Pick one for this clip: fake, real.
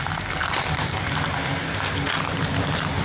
real